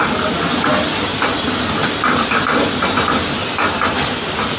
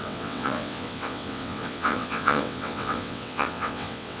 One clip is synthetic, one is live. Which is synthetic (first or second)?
second